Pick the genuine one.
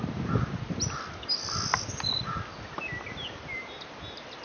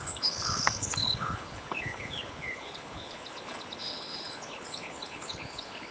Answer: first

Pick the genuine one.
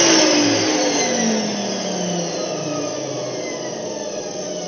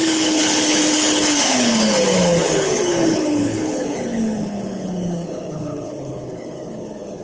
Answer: first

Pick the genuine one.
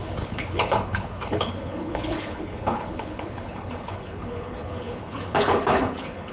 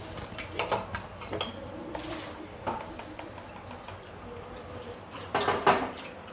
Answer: second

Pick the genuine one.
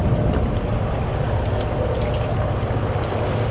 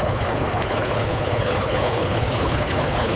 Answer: first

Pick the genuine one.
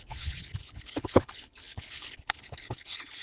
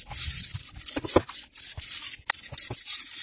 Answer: second